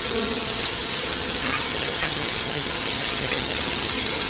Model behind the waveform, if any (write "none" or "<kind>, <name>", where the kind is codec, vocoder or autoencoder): vocoder, HiFi-GAN